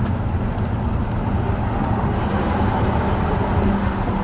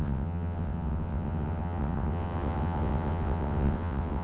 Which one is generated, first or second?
second